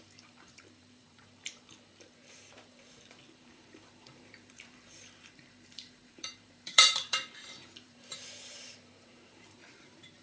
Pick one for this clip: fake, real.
fake